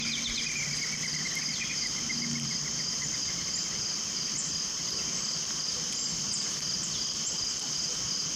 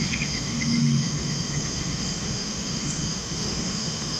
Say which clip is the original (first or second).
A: first